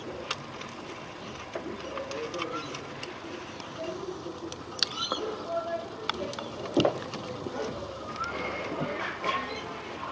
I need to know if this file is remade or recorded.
recorded